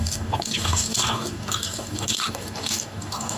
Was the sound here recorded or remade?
remade